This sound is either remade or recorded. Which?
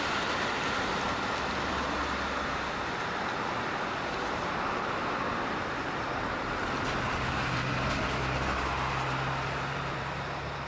recorded